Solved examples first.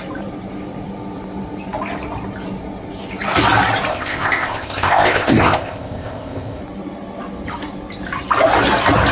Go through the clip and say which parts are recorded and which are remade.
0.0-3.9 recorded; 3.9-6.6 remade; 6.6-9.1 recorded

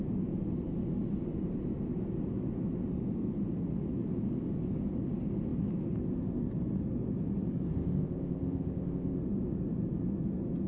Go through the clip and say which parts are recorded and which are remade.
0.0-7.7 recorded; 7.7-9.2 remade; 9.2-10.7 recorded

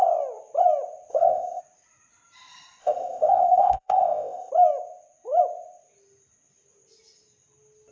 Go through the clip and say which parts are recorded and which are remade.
0.0-1.1 recorded; 1.1-1.6 remade; 1.6-2.8 recorded; 2.8-4.5 remade; 4.5-7.9 recorded